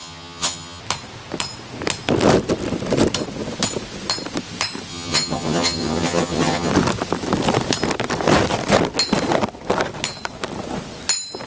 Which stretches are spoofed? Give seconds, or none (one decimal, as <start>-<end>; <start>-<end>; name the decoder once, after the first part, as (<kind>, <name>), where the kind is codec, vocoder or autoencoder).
0.0-0.8 (vocoder, HiFi-GAN); 4.9-6.7